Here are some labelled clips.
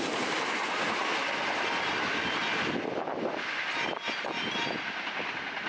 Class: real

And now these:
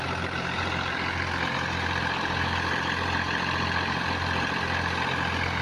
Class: real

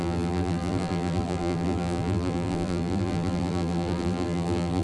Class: fake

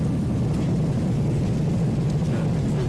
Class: real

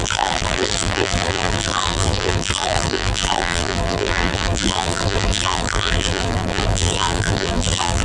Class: fake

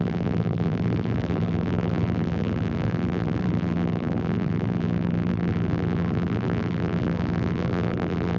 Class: fake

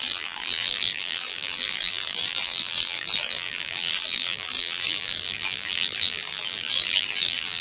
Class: fake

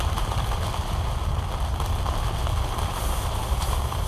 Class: real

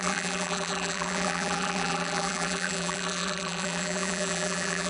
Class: fake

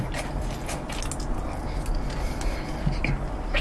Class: real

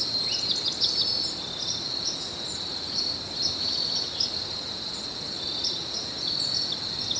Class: real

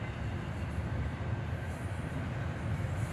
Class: real